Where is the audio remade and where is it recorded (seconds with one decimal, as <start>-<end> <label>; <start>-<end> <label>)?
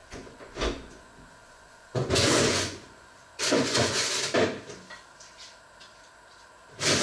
0.0-4.1 remade; 4.1-7.0 recorded